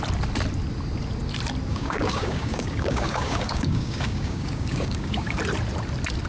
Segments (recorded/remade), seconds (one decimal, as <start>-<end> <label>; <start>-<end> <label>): 0.0-1.7 recorded; 1.7-5.4 remade; 5.4-6.3 recorded